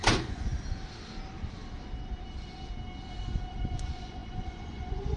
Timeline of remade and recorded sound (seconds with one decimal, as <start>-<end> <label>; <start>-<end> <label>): 0.0-0.5 remade; 0.5-3.6 recorded; 3.6-5.2 remade